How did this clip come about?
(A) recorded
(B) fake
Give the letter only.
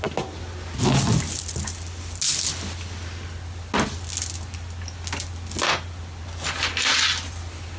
A